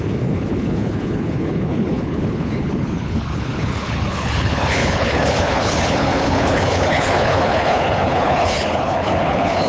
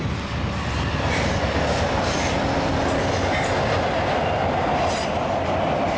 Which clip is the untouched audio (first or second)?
second